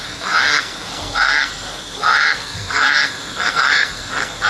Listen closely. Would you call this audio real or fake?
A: fake